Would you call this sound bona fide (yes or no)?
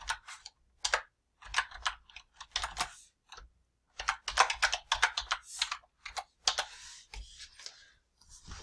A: yes